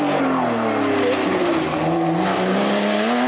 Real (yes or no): yes